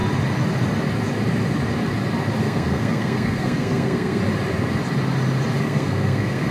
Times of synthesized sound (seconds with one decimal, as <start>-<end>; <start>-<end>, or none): 2.4-4.2; 5.6-6.5